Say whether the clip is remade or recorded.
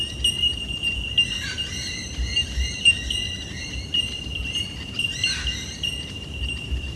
remade